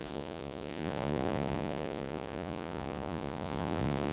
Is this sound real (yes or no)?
no